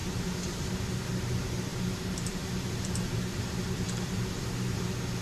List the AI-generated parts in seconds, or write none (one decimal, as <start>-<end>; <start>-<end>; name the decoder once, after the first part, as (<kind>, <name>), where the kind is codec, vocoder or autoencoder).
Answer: 0.0-0.7 (vocoder, BigVGAN v2); 1.7-4.8